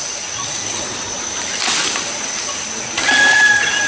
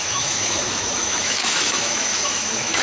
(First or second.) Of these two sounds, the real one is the first